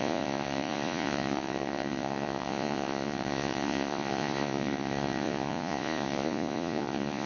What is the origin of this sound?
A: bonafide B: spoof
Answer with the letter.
B